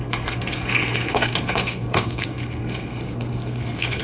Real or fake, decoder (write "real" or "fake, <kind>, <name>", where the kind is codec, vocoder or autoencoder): fake, codec, SNAC